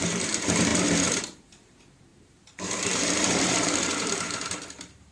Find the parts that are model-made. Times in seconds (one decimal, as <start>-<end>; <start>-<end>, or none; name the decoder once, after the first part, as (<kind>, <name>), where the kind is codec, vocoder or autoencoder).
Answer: 0.0-5.1 (vocoder, BigVGAN v2)